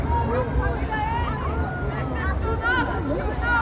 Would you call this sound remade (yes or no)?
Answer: no